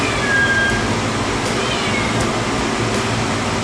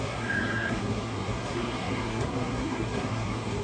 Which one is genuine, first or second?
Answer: first